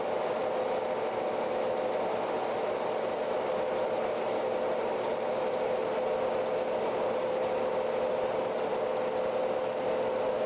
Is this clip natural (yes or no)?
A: yes